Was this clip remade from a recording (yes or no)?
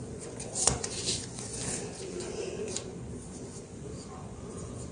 yes